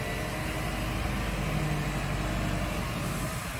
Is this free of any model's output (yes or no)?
yes